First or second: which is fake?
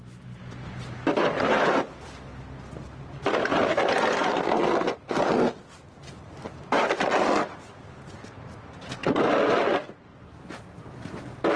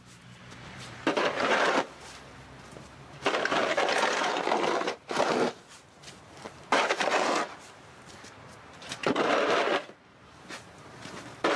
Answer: second